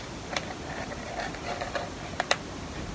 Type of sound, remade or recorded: recorded